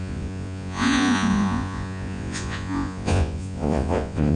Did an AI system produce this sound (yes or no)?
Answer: yes